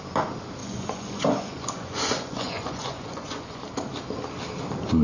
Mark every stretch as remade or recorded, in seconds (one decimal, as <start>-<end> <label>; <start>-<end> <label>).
0.0-0.6 recorded; 0.6-3.6 remade; 3.6-5.0 recorded